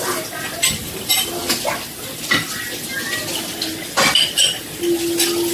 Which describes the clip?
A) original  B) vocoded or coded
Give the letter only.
A